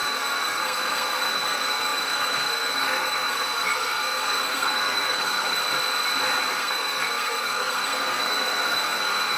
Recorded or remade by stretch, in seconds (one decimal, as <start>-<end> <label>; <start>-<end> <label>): 0.0-5.6 remade; 5.6-6.5 recorded; 6.5-9.4 remade

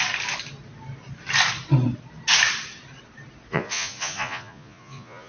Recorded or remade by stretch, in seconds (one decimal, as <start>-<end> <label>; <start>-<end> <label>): 0.0-3.5 recorded; 3.5-5.3 remade

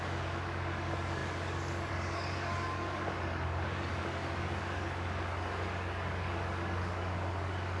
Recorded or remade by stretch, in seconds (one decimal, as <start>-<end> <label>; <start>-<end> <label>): 0.0-7.8 remade

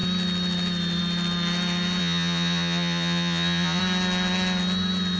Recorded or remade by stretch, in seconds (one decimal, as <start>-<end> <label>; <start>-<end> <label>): 0.0-2.0 recorded; 2.0-3.8 remade; 3.8-5.2 recorded

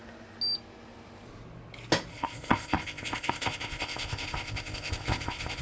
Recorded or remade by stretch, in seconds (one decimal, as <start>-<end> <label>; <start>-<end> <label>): 0.0-2.1 recorded; 2.1-5.6 remade

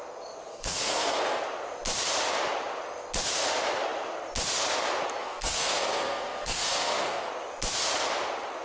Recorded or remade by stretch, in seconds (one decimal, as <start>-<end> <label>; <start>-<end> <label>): 0.0-0.5 recorded; 0.5-1.4 remade; 1.4-5.2 recorded; 5.2-7.3 remade; 7.3-8.6 recorded

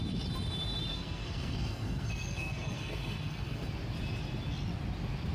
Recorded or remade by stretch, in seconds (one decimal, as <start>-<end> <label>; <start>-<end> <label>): 0.0-0.9 recorded; 0.9-3.7 remade; 3.7-5.3 recorded

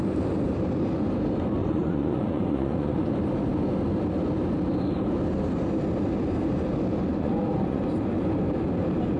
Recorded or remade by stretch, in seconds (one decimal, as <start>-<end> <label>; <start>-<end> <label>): 0.0-1.6 recorded; 1.6-3.1 remade; 3.1-7.1 recorded; 7.1-7.8 remade; 7.8-9.2 recorded